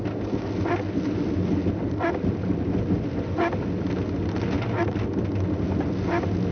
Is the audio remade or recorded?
recorded